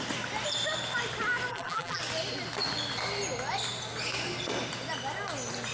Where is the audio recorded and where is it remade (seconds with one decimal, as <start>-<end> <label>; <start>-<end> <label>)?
0.0-1.5 recorded; 1.5-2.0 remade; 2.0-5.7 recorded